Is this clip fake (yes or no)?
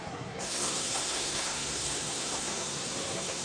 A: yes